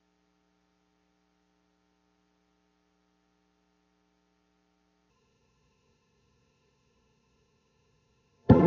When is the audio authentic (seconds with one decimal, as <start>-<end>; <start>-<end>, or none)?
0.0-5.1